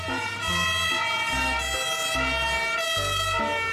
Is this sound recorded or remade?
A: recorded